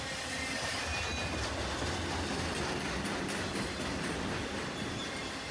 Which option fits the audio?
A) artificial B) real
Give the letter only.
B